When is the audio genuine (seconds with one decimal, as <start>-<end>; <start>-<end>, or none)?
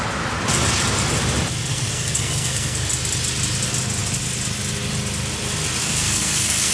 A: 0.0-1.7; 2.9-5.8